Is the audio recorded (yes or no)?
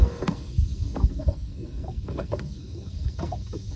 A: no